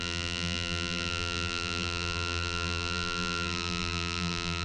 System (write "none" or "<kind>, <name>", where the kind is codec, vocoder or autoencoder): vocoder, BigVGAN v2